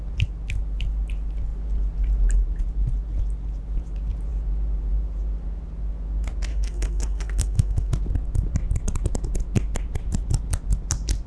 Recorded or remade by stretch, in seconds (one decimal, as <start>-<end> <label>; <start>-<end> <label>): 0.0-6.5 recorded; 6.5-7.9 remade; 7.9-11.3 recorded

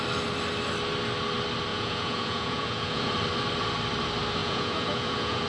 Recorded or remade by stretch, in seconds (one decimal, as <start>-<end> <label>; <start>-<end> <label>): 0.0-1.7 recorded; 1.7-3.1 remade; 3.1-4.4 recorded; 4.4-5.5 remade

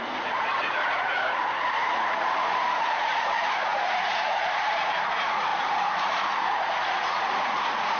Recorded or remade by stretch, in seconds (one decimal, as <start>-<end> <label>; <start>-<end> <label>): 0.0-8.0 remade